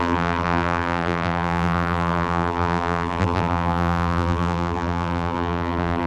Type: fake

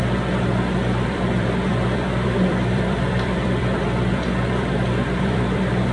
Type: fake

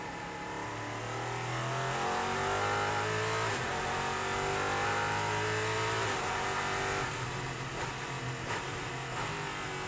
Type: real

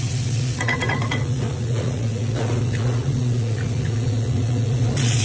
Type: fake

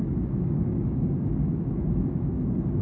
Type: fake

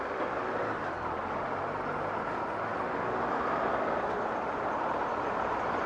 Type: real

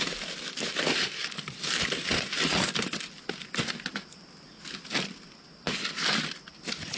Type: real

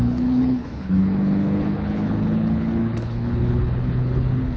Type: fake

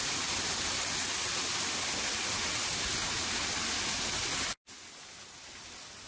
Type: real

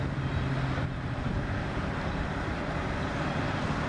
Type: real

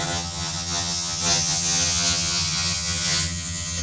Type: fake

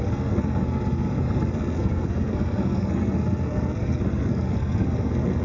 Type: fake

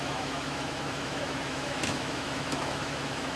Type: fake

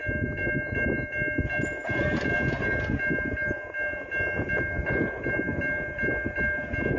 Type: real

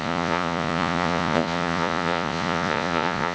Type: fake